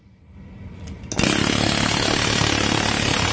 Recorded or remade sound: recorded